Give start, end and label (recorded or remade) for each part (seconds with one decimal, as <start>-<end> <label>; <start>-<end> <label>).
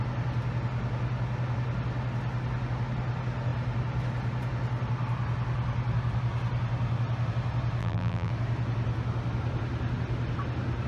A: 0.0-7.8 recorded; 7.8-8.3 remade; 8.3-10.9 recorded